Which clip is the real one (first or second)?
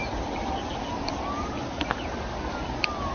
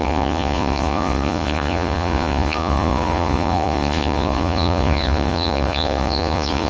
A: first